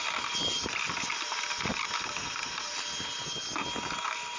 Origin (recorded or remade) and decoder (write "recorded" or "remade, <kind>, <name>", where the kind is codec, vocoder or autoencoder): recorded